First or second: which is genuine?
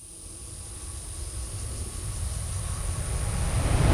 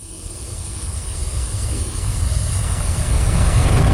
first